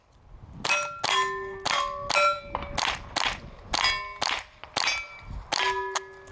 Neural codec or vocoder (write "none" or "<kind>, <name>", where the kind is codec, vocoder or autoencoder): none